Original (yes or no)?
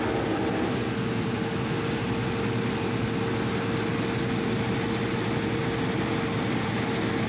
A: yes